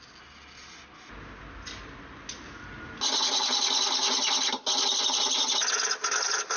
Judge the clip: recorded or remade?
recorded